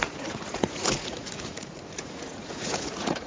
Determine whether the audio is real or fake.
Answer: fake